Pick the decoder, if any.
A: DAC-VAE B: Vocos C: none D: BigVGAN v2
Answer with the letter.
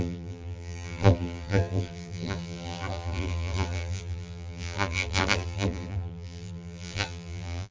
D